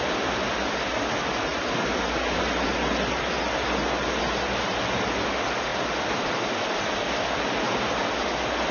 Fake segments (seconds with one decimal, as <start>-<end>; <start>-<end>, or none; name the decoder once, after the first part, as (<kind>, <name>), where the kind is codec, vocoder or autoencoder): none